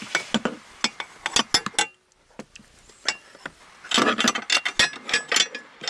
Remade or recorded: recorded